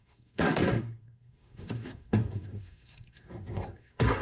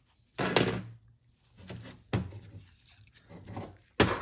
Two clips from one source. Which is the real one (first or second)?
second